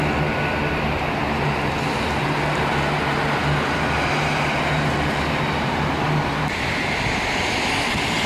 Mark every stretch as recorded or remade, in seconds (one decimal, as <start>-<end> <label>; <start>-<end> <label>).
0.0-8.3 recorded